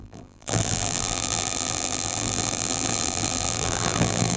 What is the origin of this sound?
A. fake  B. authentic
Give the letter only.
A